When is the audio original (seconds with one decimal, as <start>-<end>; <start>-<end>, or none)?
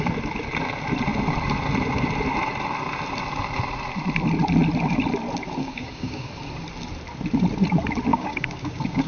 0.0-5.6; 6.3-8.1